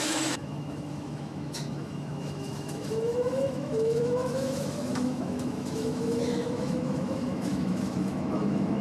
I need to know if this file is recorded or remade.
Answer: remade